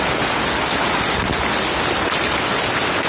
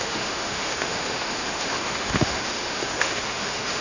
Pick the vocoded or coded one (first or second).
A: second